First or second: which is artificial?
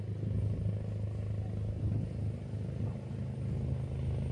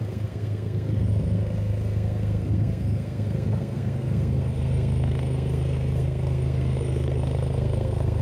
second